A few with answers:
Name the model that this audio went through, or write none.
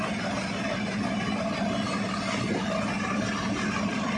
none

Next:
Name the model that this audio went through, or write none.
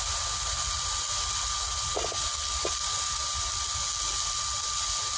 none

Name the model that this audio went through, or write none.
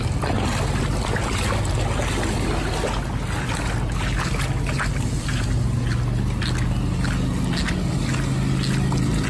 none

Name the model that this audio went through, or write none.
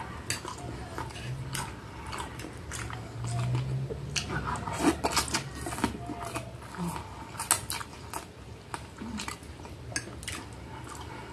none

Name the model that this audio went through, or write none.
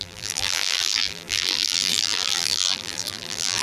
vocoder, BigVGAN v2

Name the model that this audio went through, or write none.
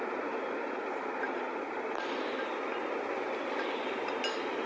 none